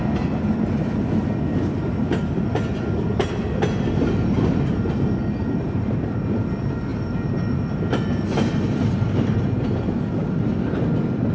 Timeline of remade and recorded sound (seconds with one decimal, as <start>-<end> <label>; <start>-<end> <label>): 0.0-11.3 recorded